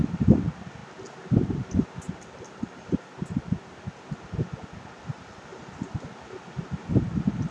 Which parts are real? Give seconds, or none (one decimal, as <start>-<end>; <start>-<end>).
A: 0.0-7.5